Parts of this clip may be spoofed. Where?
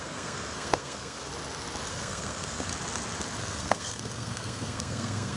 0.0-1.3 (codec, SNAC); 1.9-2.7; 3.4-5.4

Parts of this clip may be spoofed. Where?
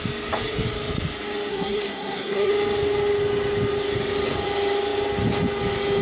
1.5-2.5 (codec, SNAC)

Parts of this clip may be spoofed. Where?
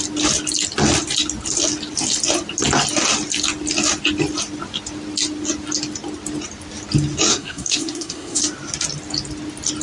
7.3-8.4 (codec, SNAC)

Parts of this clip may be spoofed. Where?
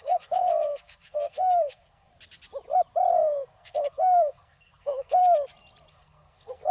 0.0-2.1 (codec, SNAC); 3.1-5.2; 5.9-6.7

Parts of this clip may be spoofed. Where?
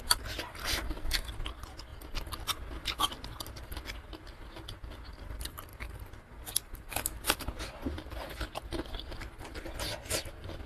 0.6-1.3 (codec, SNAC)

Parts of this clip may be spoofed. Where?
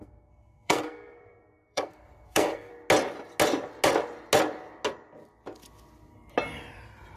0.0-2.7 (codec, SNAC)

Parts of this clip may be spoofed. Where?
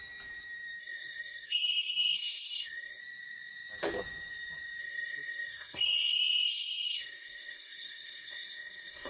0.8-3.0 (codec, SNAC); 4.8-9.1